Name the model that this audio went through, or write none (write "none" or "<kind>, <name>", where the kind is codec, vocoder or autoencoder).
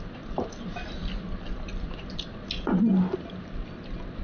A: none